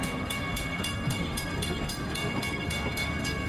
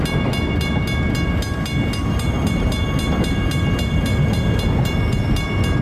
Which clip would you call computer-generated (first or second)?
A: first